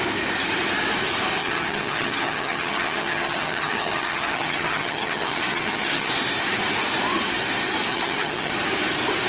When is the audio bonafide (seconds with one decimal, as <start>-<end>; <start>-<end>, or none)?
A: 0.0-1.4; 6.1-7.9; 8.5-9.3